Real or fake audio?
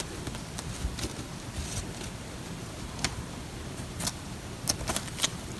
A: real